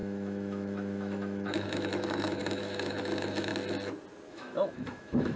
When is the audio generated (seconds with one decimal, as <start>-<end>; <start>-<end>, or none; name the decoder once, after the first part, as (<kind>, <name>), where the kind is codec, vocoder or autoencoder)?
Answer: 0.0-3.5 (autoencoder, DAC-VAE); 4.3-5.4